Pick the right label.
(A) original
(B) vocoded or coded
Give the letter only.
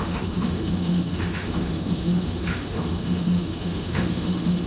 B